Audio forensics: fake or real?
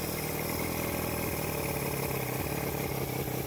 real